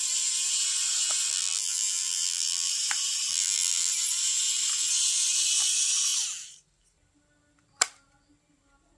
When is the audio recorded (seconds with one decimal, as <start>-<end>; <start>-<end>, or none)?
0.0-1.3; 2.7-3.3; 3.9-9.0